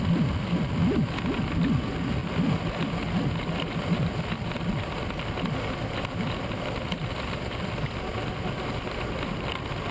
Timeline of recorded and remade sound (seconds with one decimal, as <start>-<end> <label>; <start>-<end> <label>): 0.0-9.9 recorded